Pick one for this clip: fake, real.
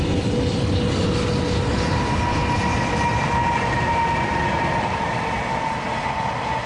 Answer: real